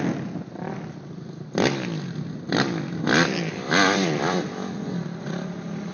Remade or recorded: recorded